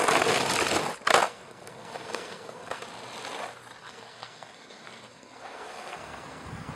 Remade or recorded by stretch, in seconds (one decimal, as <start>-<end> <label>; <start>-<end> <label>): 0.0-1.2 recorded; 1.2-2.8 remade; 2.8-3.8 recorded; 3.8-6.7 remade